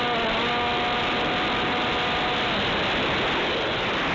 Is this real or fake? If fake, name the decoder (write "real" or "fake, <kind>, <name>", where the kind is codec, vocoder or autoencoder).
real